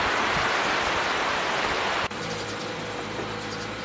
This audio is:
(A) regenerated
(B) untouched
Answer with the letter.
B